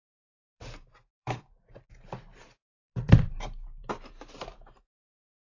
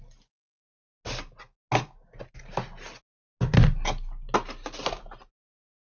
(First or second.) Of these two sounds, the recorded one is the second